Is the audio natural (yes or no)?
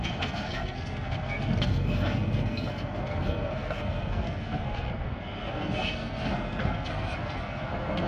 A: no